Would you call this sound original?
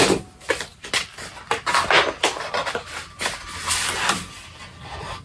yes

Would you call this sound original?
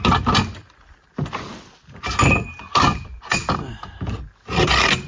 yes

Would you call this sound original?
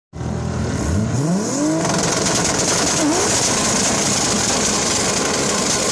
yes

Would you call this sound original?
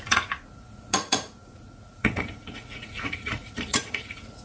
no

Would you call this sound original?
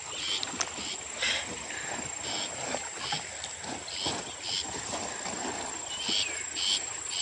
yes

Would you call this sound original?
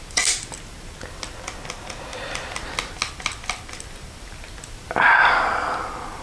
yes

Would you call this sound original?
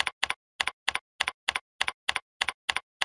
yes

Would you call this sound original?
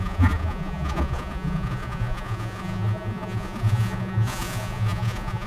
no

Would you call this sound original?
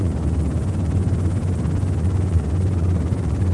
no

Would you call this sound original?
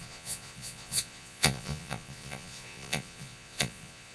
no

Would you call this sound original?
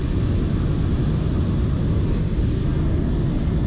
yes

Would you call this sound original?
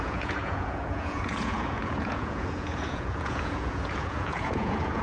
no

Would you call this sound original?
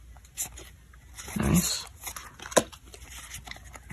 yes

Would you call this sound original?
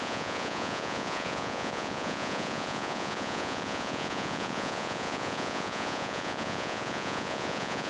no